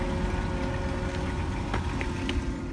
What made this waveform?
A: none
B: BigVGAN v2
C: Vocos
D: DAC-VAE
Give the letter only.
A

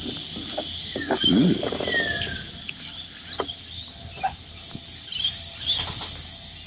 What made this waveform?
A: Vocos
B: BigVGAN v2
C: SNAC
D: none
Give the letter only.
D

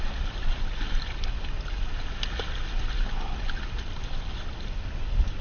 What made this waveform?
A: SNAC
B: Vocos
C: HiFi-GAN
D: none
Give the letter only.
D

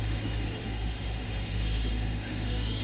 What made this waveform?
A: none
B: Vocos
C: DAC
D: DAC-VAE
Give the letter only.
D